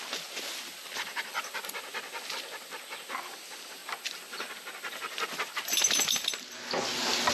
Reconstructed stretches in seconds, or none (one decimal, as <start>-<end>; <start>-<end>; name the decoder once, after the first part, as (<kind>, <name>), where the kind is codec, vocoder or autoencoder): none